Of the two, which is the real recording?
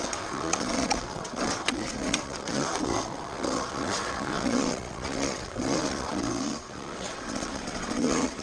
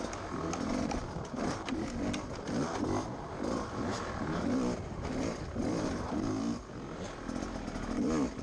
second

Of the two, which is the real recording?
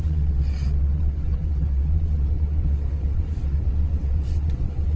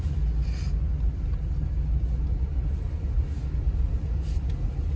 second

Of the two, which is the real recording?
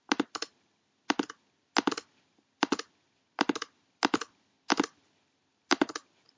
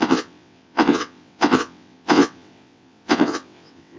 first